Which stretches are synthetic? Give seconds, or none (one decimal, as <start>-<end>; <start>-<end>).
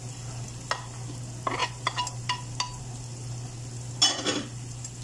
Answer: none